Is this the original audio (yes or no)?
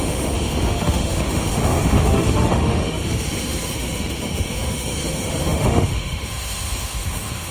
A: no